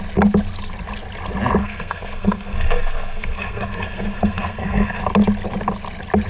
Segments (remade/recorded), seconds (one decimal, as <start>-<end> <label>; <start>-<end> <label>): 0.0-1.6 recorded; 1.6-5.0 remade; 5.0-6.3 recorded